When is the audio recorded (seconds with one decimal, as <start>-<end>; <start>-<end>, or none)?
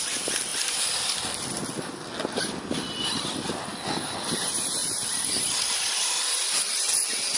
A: 0.0-0.5; 1.2-4.8; 6.5-7.4